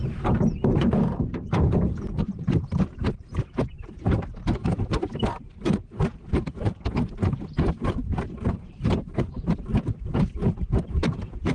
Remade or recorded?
remade